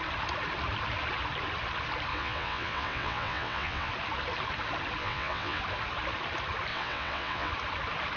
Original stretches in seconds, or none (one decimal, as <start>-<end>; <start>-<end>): 0.0-2.1; 3.9-5.0; 5.6-6.7; 7.5-8.2